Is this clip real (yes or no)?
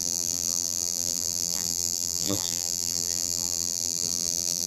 no